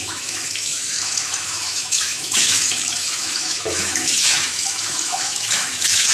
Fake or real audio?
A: fake